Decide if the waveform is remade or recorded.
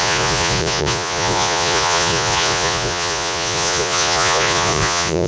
remade